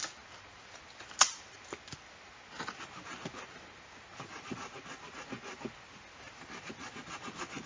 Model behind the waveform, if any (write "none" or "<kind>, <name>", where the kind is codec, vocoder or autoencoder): none